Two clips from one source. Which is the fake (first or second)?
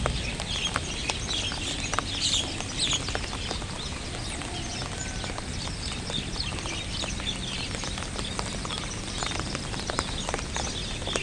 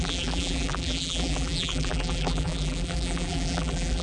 second